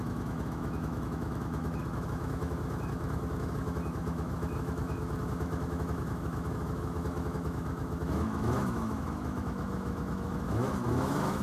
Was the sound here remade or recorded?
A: remade